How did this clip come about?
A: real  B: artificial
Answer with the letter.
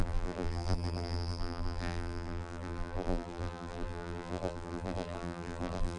B